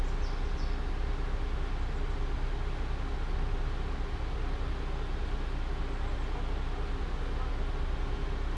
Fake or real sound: real